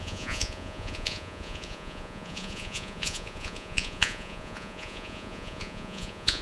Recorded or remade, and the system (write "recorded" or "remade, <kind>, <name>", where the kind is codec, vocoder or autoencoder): remade, vocoder, Vocos